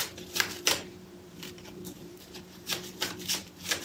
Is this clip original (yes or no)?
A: no